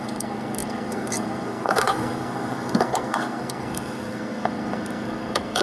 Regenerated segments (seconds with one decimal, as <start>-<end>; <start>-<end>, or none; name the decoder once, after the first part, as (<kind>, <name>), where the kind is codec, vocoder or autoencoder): 0.0-5.6 (codec, SNAC)